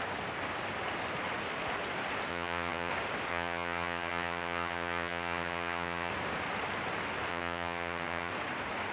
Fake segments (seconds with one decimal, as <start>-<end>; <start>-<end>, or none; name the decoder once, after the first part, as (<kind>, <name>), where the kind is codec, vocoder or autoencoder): 2.3-2.9 (vocoder, HiFi-GAN); 3.3-6.1; 7.3-8.3